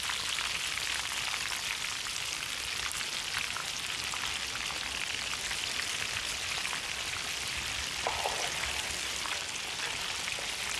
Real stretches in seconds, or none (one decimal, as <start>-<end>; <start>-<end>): 0.0-10.8